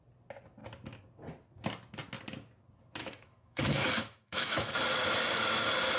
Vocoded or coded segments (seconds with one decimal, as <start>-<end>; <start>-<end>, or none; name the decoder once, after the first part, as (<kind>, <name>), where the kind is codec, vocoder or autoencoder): 3.0-4.7 (autoencoder, DAC-VAE)